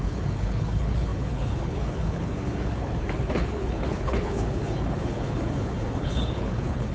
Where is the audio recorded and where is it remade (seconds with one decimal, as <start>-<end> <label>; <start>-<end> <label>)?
0.0-6.9 remade